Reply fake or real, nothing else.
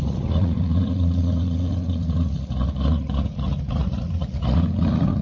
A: fake